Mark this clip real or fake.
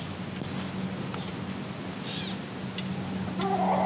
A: real